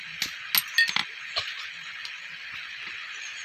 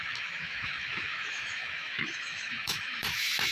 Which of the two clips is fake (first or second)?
second